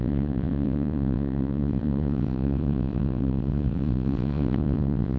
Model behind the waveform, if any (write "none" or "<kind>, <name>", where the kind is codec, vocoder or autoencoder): vocoder, WaveNeXt